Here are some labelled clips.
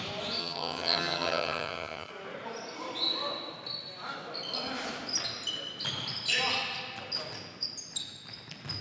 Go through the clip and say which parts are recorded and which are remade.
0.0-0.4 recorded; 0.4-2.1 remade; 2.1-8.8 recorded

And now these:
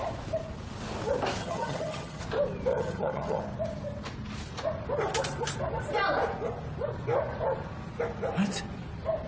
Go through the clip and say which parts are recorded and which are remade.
0.0-1.4 recorded; 1.4-2.2 remade; 2.2-2.7 recorded; 2.7-3.4 remade; 3.4-9.3 recorded

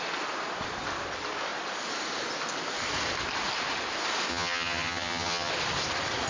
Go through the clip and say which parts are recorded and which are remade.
0.0-4.3 recorded; 4.3-5.5 remade; 5.5-6.3 recorded

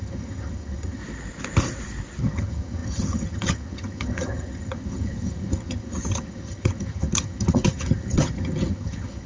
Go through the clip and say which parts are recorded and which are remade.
0.0-1.0 remade; 1.0-2.2 recorded; 2.2-9.3 remade

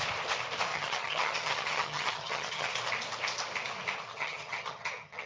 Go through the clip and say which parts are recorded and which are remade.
0.0-0.7 recorded; 0.7-2.7 remade; 2.7-4.1 recorded; 4.1-5.3 remade